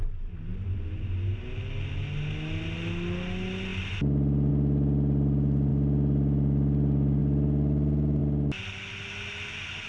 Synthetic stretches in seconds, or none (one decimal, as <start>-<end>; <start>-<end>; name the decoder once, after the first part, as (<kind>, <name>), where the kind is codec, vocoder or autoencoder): none